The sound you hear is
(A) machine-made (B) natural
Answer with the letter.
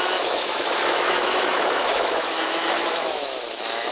A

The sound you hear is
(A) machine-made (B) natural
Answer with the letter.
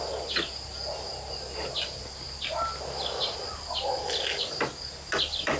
B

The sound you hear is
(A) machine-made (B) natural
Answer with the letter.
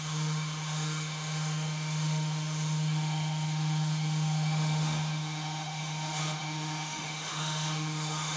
A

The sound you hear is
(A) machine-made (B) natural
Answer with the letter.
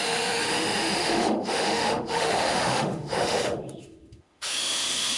A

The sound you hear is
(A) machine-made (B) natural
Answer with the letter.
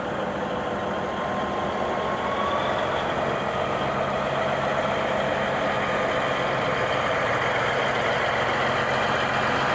B